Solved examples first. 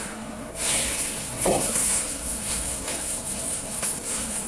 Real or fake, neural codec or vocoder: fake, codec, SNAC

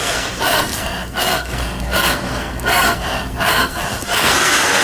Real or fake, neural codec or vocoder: fake, codec, SNAC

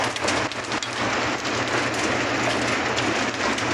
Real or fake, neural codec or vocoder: real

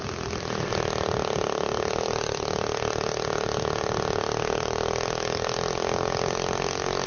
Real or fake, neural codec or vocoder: real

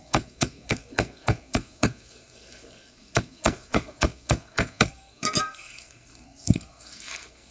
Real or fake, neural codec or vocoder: fake, codec, SNAC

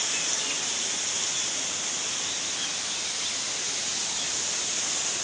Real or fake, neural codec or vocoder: real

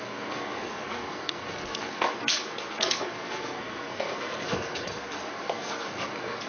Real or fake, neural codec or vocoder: fake, codec, SNAC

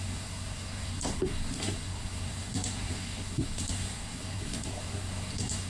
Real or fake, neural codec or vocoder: fake, codec, SNAC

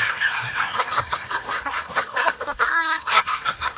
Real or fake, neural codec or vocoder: fake, codec, SNAC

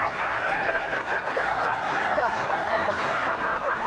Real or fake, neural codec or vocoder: fake, codec, SNAC